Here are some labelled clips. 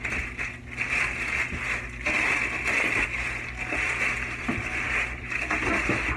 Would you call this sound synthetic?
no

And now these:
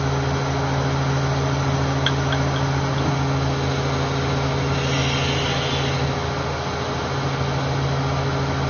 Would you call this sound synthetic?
no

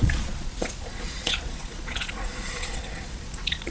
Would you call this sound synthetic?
yes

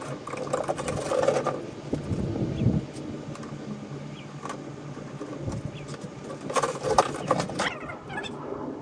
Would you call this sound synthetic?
no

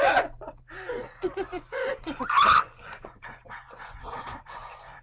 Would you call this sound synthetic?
yes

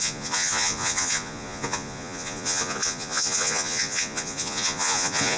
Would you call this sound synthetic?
yes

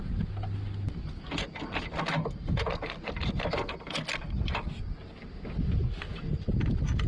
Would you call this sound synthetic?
no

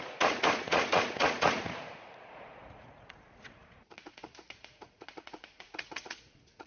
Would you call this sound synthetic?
yes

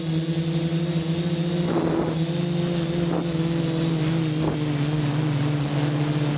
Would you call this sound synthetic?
no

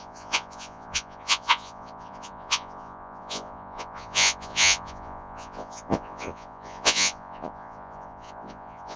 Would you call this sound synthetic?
yes